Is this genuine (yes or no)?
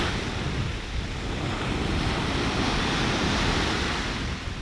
yes